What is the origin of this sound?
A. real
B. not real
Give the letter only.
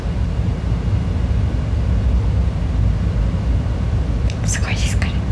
A